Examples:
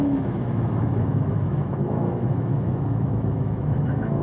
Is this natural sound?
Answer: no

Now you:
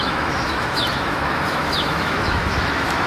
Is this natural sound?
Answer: no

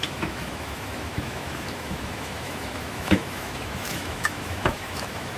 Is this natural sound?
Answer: no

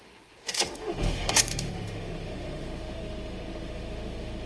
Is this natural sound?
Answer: no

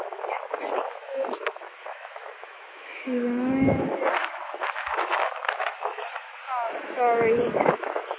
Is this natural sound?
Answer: no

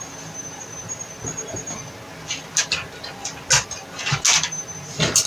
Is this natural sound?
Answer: yes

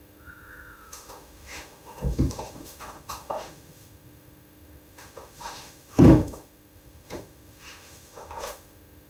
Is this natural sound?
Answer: no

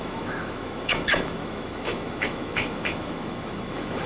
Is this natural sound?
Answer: no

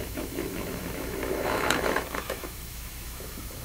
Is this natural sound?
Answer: no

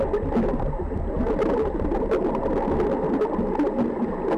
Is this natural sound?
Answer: yes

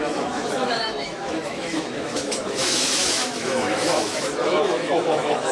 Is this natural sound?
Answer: no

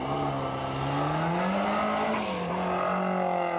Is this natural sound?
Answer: yes